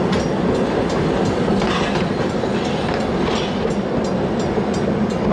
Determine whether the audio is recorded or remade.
recorded